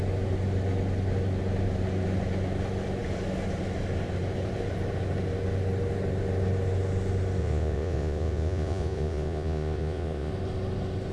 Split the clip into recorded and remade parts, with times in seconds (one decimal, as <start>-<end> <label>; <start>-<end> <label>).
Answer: 0.0-7.4 recorded; 7.4-10.3 remade; 10.3-11.1 recorded